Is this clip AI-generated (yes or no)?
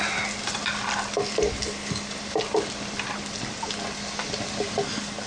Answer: no